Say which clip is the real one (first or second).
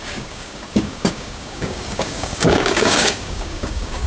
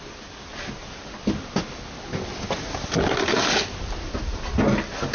second